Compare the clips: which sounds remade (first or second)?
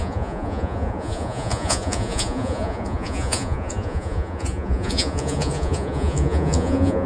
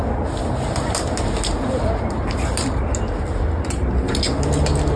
first